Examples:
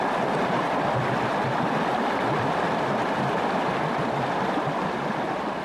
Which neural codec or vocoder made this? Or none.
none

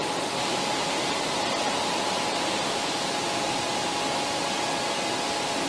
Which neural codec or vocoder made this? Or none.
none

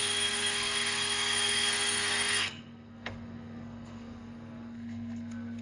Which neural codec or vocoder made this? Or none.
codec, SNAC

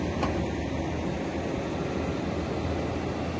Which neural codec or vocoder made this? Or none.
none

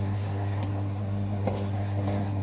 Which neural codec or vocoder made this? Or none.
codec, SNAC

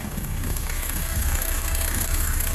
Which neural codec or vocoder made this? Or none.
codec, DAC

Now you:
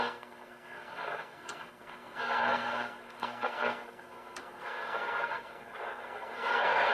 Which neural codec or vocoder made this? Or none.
codec, SNAC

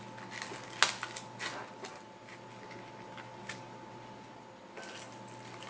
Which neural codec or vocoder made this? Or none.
none